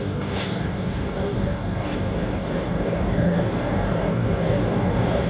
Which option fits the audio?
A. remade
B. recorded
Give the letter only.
A